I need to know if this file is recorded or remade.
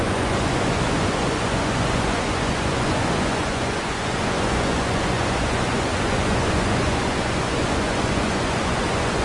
remade